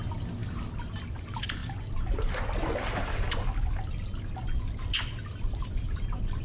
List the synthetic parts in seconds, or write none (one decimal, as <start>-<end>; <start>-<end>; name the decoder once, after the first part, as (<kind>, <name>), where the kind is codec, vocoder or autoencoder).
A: none